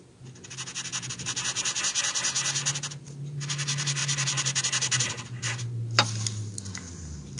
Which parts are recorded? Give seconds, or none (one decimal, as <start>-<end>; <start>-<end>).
0.0-7.4